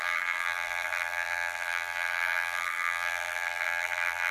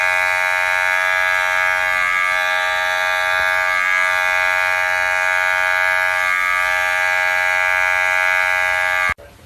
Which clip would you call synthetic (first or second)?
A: first